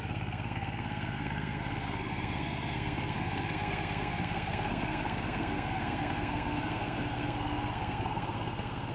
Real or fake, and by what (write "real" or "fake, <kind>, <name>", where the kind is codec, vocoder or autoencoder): fake, codec, SNAC